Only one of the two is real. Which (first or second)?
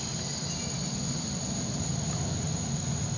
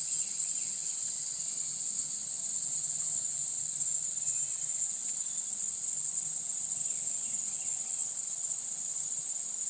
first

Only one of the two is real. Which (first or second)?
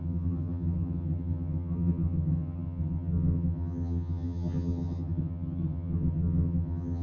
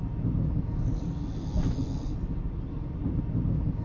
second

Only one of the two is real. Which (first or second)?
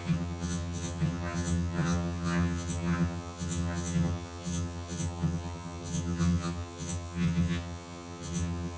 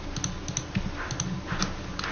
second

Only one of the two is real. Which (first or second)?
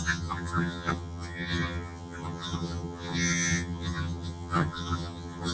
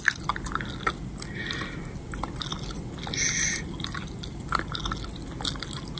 second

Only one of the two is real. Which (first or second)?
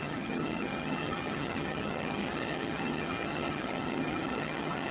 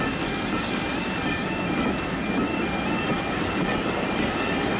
second